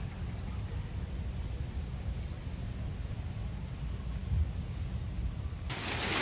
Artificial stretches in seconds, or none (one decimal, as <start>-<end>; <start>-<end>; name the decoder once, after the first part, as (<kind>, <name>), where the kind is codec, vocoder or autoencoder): 4.2-6.2 (vocoder, BigVGAN v2)